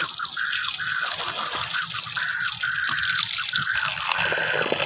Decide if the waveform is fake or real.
real